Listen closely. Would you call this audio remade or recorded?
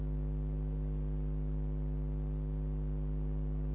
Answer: recorded